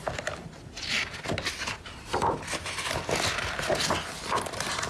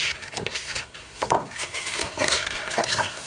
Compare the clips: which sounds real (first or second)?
first